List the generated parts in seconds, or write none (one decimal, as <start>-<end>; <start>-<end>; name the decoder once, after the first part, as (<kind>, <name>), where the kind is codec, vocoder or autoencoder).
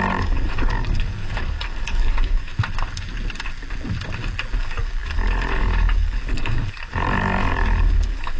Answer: 0.0-2.5 (codec, DAC); 4.6-8.4